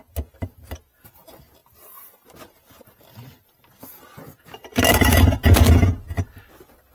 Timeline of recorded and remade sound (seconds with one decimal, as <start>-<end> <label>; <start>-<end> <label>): 0.0-1.6 recorded; 1.6-5.7 remade; 5.7-6.9 recorded